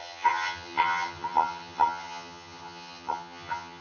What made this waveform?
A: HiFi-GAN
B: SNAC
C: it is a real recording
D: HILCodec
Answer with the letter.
A